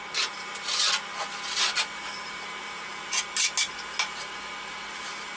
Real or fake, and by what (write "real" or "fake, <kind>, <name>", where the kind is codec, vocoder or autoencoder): real